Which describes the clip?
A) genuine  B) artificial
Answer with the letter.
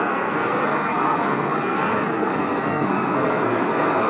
B